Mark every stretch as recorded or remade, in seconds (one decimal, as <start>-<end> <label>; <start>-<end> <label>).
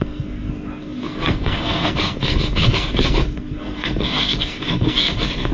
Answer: 0.0-5.5 remade